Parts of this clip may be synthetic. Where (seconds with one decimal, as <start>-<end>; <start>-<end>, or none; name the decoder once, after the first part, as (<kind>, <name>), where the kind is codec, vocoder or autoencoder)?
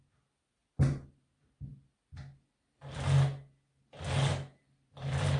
none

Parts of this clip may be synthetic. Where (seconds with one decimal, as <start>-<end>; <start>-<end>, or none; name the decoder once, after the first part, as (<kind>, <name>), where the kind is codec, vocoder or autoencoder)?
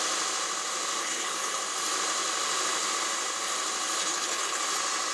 1.0-1.6 (codec, HILCodec); 4.0-4.6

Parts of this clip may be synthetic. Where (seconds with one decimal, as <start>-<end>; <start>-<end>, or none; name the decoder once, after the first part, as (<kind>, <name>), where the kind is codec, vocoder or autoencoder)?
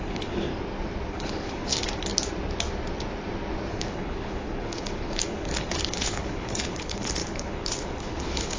0.0-0.5 (codec, HILCodec); 1.1-1.7; 3.7-8.6